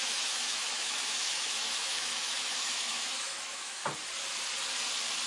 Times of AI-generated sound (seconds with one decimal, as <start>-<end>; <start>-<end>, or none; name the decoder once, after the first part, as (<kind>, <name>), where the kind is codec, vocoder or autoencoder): 0.0-3.8 (autoencoder, DAC-VAE)